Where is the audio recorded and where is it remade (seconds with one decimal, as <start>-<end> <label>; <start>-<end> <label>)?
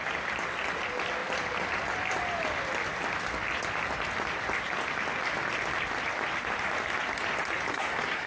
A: 0.0-7.7 recorded; 7.7-8.3 remade